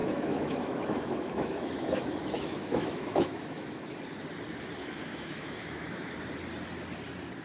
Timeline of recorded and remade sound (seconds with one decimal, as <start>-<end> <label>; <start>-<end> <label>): 0.0-3.9 remade; 3.9-4.8 recorded; 4.8-6.1 remade; 6.1-7.4 recorded